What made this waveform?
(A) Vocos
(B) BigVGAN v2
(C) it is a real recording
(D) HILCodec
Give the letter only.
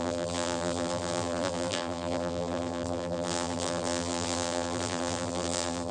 B